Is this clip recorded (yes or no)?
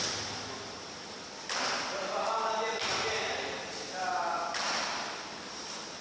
yes